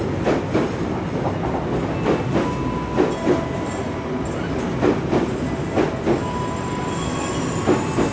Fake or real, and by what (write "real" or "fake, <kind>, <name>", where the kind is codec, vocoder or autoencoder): real